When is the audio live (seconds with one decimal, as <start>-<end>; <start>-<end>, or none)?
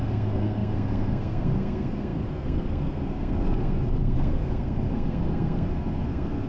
none